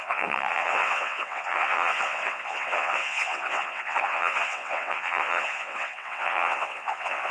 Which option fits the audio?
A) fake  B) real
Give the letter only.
A